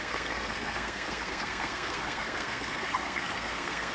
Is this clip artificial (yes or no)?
yes